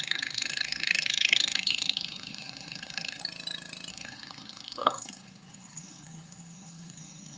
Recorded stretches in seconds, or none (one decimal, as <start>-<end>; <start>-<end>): 3.2-3.9